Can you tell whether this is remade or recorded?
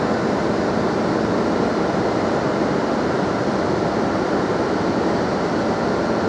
recorded